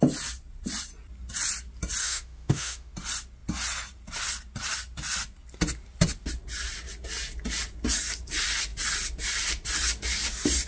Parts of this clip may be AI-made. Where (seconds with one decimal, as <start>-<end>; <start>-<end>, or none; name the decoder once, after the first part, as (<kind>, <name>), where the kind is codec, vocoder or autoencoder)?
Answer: 2.0-2.9 (autoencoder, DAC-VAE)